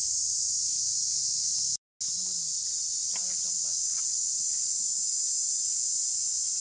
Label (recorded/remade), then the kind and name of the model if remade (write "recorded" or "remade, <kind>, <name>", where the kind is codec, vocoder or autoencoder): recorded